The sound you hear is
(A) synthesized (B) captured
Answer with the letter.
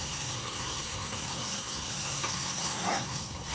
A